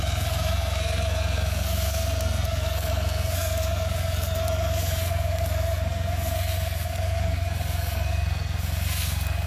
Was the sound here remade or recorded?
remade